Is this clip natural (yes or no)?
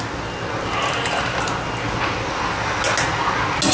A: yes